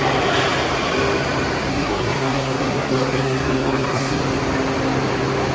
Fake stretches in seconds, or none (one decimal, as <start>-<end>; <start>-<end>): 1.7-4.2